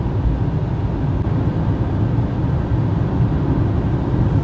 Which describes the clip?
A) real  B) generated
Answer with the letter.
A